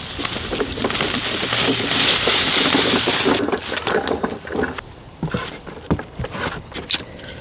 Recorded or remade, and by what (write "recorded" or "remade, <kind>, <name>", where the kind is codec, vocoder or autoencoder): recorded